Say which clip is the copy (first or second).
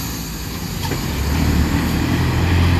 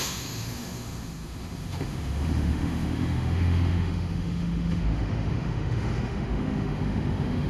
second